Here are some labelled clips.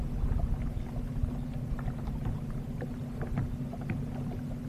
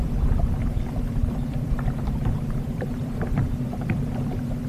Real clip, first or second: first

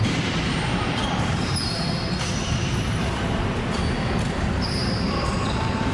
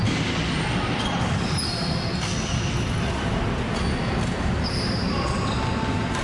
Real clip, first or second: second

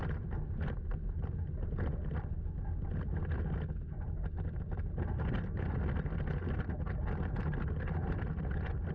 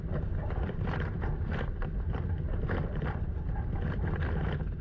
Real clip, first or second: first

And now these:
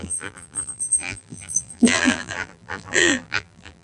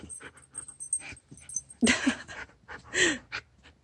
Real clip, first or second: second